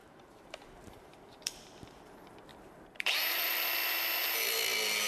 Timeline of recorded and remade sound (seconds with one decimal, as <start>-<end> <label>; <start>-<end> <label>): 0.0-2.0 remade; 2.0-2.5 recorded; 2.5-3.6 remade; 3.6-5.1 recorded